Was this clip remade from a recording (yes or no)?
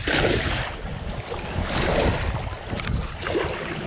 no